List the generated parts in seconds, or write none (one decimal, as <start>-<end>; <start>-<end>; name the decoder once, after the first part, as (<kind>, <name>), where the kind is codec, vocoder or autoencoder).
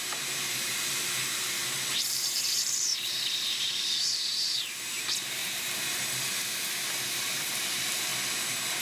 0.0-8.1 (vocoder, BigVGAN v2)